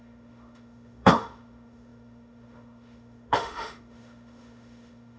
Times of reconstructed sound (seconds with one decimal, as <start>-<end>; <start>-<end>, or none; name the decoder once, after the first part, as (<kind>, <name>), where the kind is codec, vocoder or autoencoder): 0.0-5.2 (autoencoder, DAC-VAE)